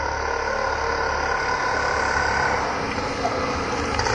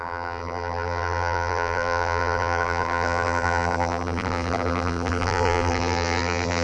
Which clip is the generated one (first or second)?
second